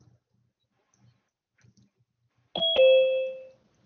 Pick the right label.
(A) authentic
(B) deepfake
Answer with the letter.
A